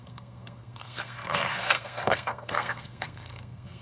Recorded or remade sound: remade